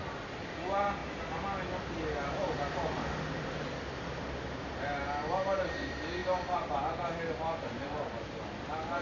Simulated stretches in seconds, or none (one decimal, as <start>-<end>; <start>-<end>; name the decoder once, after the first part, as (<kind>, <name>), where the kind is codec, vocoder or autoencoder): 6.2-6.8 (vocoder, BigVGAN v2)